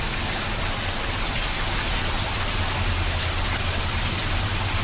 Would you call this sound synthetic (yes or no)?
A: no